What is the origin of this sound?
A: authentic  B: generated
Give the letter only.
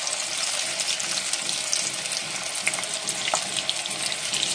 A